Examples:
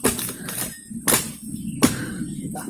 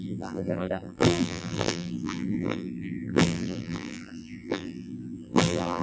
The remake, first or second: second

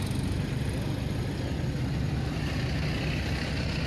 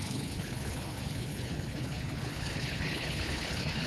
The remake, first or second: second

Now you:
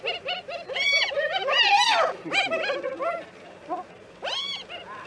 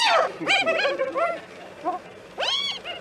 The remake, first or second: first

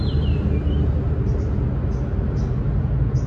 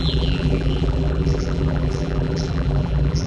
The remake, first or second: second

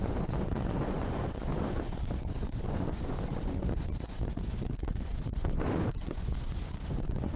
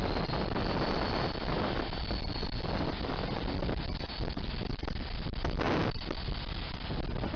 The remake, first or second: first